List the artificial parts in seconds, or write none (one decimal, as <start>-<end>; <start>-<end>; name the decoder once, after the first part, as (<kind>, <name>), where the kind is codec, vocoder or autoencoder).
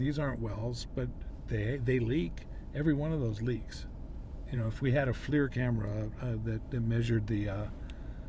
0.0-0.6 (vocoder, Vocos); 3.8-5.9